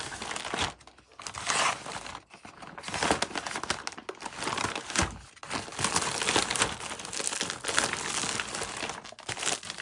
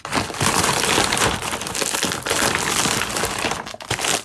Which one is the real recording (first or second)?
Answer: first